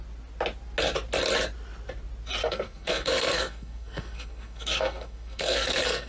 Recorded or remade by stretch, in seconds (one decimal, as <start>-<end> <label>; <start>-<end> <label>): 0.0-2.4 recorded; 2.4-6.1 remade